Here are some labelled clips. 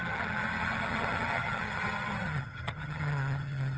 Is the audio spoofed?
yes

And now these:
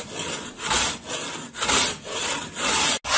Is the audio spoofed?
no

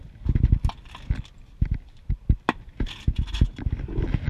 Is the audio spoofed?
no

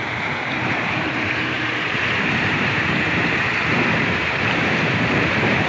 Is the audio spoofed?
yes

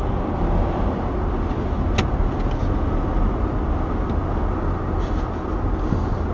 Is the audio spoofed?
no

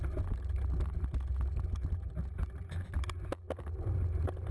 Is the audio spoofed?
no